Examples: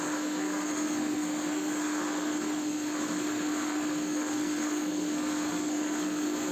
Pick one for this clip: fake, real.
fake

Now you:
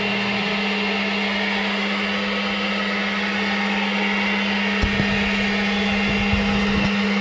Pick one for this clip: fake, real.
real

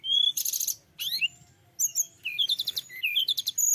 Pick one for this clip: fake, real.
real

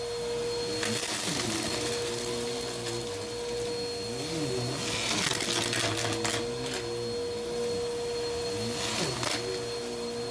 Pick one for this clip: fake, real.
real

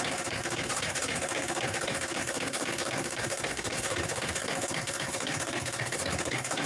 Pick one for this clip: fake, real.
fake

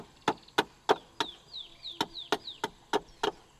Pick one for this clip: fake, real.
real